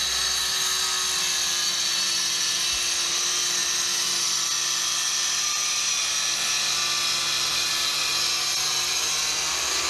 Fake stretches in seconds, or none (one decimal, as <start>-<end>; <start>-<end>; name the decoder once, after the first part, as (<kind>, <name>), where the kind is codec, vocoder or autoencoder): none